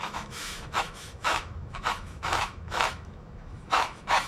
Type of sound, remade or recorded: remade